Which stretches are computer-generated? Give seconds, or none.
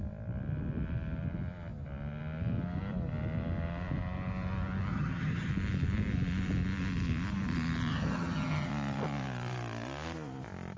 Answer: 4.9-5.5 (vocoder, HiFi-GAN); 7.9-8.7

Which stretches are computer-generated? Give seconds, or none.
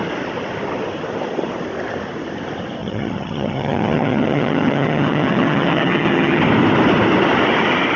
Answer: 2.8-6.4 (vocoder, HiFi-GAN)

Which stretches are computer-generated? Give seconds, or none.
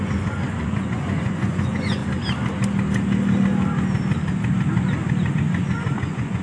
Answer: 0.0-2.0 (vocoder, Vocos); 5.3-6.4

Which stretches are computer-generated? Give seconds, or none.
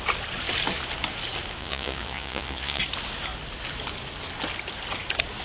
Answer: 1.6-2.8 (vocoder, Vocos)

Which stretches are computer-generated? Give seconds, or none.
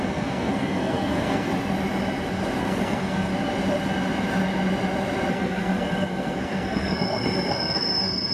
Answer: 0.0-1.5 (codec, SNAC); 2.6-3.3; 5.3-8.3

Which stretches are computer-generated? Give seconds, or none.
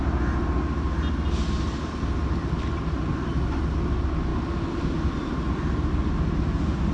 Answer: none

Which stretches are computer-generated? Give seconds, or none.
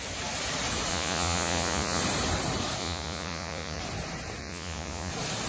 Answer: 0.9-2.0 (vocoder, Vocos); 2.8-3.8; 4.4-5.1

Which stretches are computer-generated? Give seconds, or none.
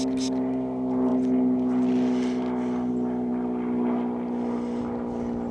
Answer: none